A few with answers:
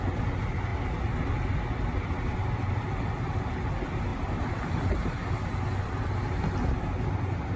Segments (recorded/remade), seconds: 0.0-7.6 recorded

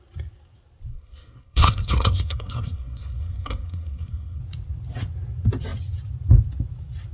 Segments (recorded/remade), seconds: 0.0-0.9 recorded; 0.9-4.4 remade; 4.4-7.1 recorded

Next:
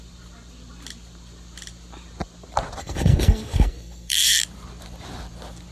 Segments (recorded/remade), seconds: 0.0-2.8 recorded; 2.8-4.4 remade; 4.4-5.7 recorded

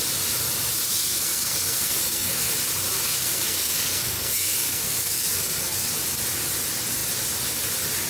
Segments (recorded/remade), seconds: 0.0-0.9 recorded; 0.9-2.5 remade; 2.5-2.9 recorded; 2.9-5.9 remade; 5.9-8.1 recorded

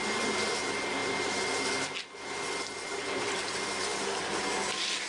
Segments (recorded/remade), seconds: 0.0-5.1 recorded